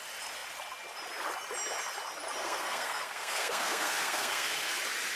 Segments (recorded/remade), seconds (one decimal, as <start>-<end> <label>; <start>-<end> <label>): 0.0-2.4 recorded; 2.4-4.8 remade; 4.8-5.2 recorded